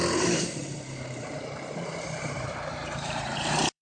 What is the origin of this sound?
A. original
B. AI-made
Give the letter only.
B